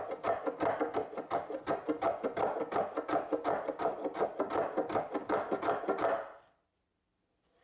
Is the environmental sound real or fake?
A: real